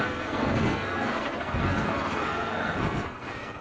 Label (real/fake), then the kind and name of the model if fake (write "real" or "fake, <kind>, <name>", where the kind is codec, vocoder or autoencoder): fake, codec, SNAC